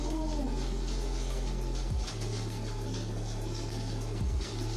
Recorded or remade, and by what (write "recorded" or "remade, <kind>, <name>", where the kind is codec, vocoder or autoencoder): remade, codec, SNAC